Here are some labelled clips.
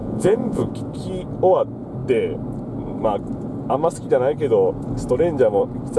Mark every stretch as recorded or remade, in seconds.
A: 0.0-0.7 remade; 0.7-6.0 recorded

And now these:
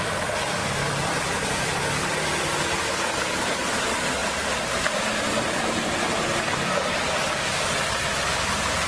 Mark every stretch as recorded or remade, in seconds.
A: 0.0-8.9 recorded

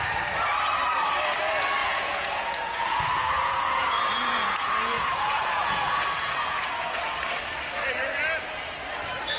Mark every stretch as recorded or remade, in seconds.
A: 0.0-1.8 recorded; 1.8-7.0 remade; 7.0-9.4 recorded

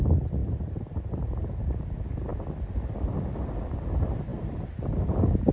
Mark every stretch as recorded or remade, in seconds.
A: 0.0-5.5 recorded

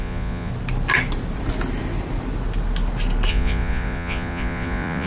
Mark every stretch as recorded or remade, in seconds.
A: 0.0-0.5 remade; 0.5-3.3 recorded; 3.3-5.1 remade

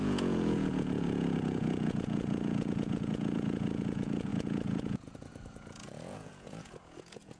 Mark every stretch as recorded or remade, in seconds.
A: 0.0-7.4 remade